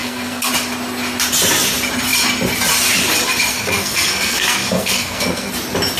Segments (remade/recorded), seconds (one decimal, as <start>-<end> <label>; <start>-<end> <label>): 0.0-0.5 remade; 0.5-3.5 recorded; 3.5-5.5 remade; 5.5-6.0 recorded